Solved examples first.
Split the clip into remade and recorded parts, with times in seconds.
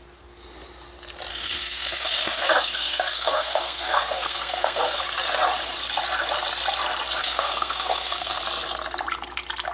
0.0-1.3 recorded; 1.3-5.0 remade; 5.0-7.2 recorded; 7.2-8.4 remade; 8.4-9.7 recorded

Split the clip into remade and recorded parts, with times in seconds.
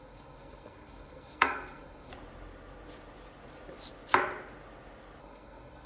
0.0-2.1 remade; 2.1-5.2 recorded; 5.2-5.9 remade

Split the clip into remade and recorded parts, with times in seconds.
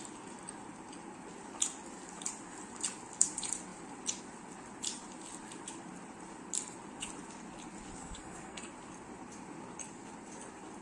0.0-8.0 recorded; 8.0-8.7 remade; 8.7-10.8 recorded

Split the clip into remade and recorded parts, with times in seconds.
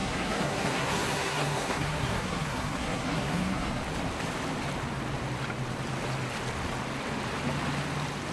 0.0-3.8 remade; 3.8-8.3 recorded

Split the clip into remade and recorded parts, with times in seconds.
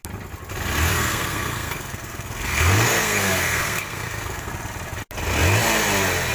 0.0-0.9 recorded; 0.9-4.5 remade; 4.5-6.3 recorded